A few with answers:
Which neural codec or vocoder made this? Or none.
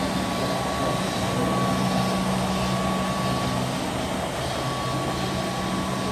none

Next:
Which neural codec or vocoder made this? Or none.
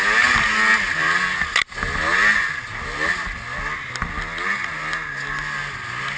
none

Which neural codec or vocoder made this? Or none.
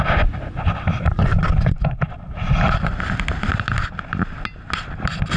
none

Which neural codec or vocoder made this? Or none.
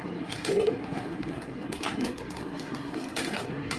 codec, SNAC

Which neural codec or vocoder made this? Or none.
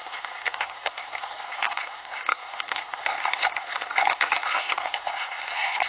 codec, SNAC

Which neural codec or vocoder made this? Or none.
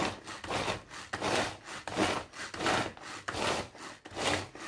none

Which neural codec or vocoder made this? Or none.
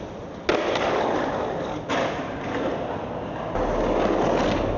none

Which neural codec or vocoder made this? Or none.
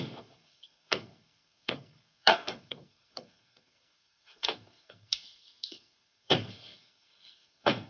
codec, SNAC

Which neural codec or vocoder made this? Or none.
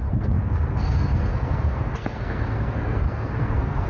codec, SNAC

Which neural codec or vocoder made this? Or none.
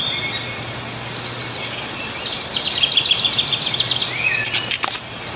none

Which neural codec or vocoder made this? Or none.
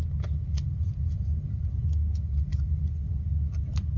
none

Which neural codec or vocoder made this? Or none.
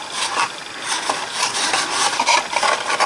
none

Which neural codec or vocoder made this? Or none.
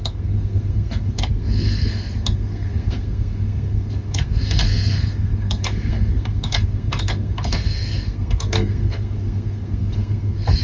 codec, SNAC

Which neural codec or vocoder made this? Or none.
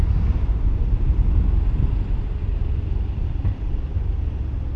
none